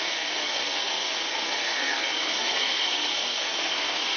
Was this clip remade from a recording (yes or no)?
yes